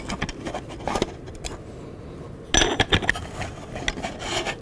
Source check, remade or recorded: recorded